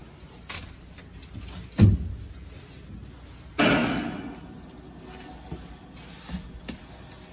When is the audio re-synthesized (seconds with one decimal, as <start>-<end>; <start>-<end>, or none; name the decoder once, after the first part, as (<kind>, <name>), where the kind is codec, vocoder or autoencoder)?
none